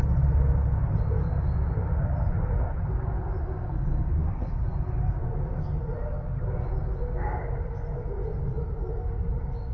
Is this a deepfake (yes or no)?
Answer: no